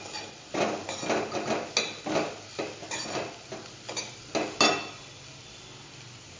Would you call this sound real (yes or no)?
yes